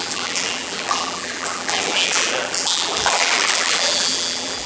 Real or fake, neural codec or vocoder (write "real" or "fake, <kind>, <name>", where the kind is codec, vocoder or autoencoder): fake, vocoder, BigVGAN v2